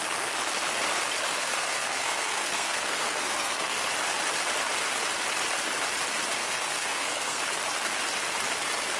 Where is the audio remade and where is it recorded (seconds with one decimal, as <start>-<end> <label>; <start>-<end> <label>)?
0.0-1.4 recorded; 1.4-3.9 remade; 3.9-6.4 recorded; 6.4-7.4 remade; 7.4-9.0 recorded